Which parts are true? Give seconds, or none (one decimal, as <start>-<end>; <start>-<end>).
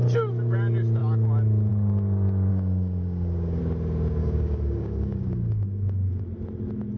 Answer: 0.0-2.5; 3.6-4.2; 6.2-7.0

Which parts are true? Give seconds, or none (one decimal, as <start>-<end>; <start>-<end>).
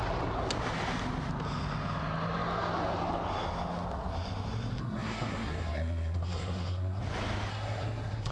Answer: 0.0-4.8; 7.0-7.5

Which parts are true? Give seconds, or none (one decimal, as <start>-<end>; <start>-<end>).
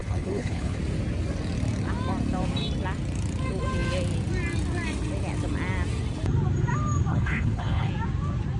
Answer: 0.8-7.1; 7.9-8.6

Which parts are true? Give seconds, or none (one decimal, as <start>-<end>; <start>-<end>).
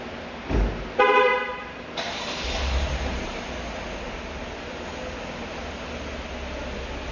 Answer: 0.0-1.3; 3.5-7.1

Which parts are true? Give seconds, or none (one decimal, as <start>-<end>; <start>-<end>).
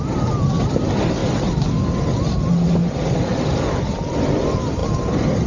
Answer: 0.0-5.5